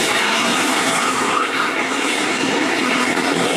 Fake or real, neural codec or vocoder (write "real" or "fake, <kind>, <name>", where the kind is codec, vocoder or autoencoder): fake, codec, SNAC